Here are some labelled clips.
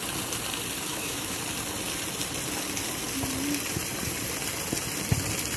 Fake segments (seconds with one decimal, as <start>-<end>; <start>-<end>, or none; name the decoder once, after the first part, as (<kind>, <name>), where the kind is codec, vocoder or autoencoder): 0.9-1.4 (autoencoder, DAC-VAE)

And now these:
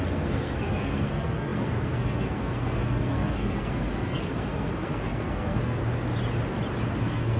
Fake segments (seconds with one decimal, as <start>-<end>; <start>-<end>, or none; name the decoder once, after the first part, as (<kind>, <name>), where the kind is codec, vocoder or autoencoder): 0.0-5.8 (codec, SNAC); 7.0-7.4

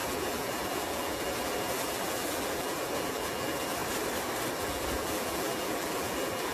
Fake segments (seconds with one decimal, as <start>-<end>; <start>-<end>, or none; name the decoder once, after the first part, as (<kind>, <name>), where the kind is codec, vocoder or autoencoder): 0.0-3.8 (vocoder, BigVGAN v2); 4.6-6.5